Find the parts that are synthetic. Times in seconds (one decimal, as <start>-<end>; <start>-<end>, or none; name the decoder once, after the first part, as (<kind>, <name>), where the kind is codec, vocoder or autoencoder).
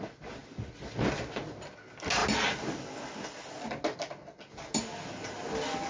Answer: none